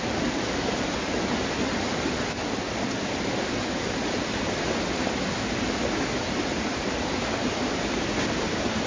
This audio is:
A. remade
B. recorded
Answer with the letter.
B